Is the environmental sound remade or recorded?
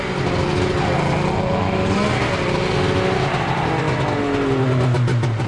recorded